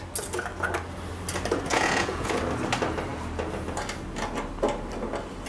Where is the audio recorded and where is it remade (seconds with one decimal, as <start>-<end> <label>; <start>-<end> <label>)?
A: 0.0-1.7 recorded; 1.7-2.4 remade; 2.4-5.5 recorded